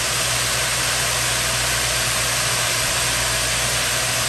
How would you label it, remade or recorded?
recorded